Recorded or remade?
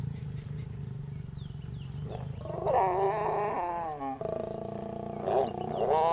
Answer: recorded